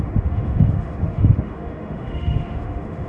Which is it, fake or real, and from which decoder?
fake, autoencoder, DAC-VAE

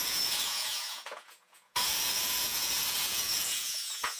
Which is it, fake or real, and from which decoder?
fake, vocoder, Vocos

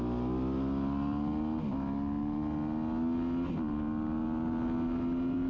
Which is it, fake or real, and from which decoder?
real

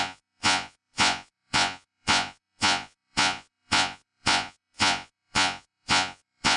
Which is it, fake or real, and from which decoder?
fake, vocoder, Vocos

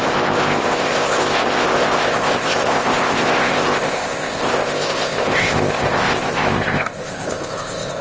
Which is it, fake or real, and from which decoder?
fake, codec, ZipCodec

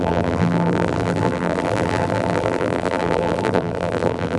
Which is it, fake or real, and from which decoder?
fake, vocoder, BigVGAN v2